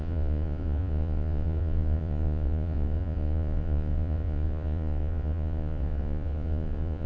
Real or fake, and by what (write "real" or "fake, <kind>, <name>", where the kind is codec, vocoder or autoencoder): fake, vocoder, Vocos